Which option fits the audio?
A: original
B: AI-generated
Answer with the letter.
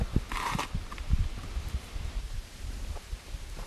B